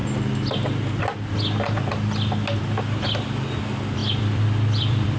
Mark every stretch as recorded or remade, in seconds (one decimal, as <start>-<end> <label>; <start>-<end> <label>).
0.0-4.0 recorded; 4.0-5.2 remade